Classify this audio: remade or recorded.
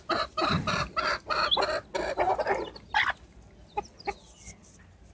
recorded